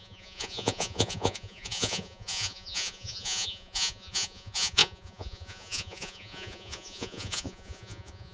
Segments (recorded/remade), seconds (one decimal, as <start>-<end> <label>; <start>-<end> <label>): 0.0-8.3 remade